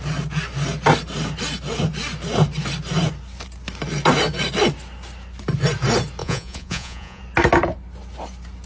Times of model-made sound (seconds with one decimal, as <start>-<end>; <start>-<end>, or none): 6.2-7.2